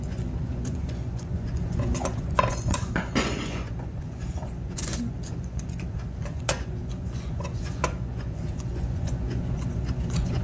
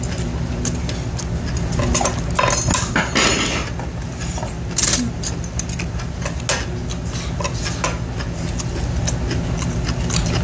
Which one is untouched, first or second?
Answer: second